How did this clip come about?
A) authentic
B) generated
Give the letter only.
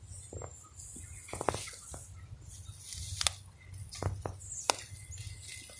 A